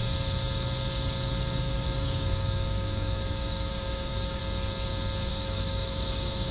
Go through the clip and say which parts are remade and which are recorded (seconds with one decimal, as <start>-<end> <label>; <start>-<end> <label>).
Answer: 0.0-1.6 recorded; 1.6-4.4 remade; 4.4-5.3 recorded; 5.3-6.5 remade